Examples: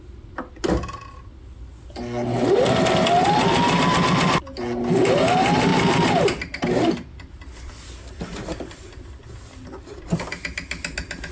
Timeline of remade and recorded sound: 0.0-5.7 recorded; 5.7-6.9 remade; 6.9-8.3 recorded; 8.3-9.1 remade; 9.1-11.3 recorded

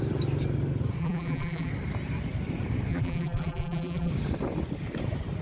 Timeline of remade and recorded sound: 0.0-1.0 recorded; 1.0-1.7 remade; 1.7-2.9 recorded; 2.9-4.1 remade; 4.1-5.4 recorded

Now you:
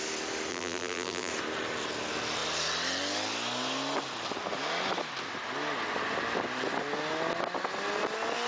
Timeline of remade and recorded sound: 0.0-0.5 recorded; 0.5-1.3 remade; 1.3-8.5 recorded